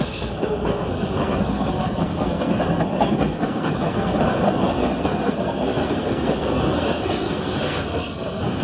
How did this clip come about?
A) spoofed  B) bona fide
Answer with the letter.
A